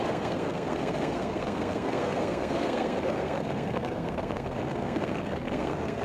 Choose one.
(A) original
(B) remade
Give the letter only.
B